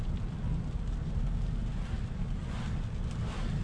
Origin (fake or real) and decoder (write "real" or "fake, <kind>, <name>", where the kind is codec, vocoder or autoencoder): real